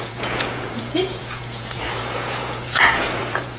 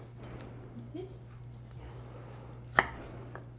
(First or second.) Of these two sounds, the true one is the second